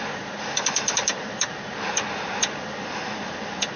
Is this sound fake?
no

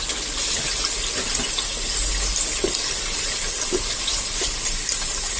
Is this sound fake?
no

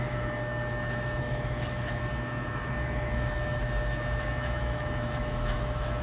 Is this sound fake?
yes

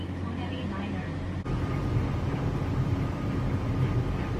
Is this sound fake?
no